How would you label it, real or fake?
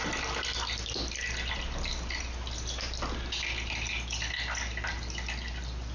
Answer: real